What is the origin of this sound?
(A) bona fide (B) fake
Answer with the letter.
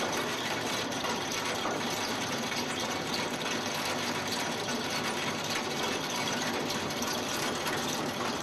B